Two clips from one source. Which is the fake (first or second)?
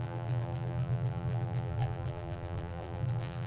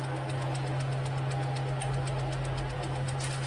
first